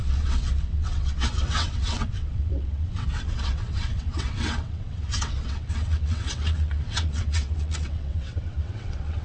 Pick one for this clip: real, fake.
fake